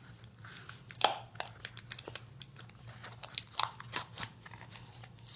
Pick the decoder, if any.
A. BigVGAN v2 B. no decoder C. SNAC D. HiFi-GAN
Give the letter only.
B